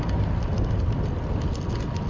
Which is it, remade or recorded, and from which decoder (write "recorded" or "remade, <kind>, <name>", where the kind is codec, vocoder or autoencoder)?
recorded